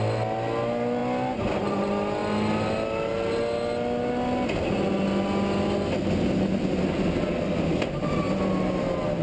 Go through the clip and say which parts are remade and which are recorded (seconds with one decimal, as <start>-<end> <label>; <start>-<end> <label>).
0.0-9.2 recorded